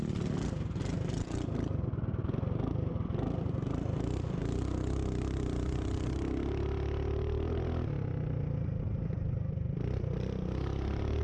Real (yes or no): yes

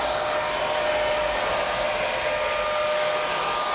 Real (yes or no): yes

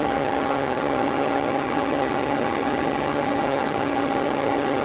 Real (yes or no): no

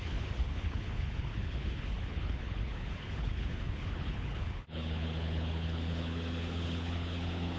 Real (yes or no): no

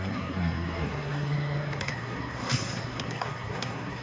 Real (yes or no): no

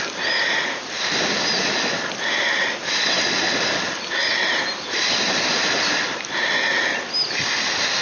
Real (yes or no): yes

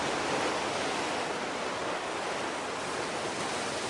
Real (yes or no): yes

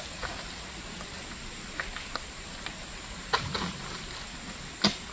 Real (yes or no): yes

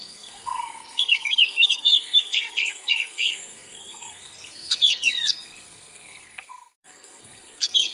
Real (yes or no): no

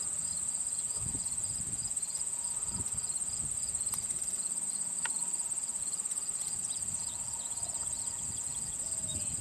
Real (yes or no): no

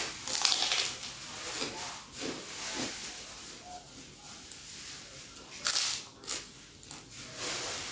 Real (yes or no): yes